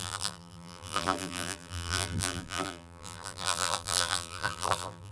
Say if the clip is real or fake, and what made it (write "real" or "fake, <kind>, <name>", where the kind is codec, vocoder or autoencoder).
fake, vocoder, BigVGAN v2